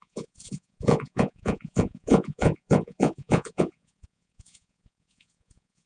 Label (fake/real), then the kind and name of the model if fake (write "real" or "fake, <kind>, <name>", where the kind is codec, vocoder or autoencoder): fake, vocoder, Vocos